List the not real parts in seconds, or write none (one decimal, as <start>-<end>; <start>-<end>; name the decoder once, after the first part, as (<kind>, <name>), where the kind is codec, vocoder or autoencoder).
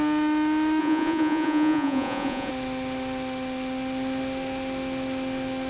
0.8-2.5 (vocoder, Vocos)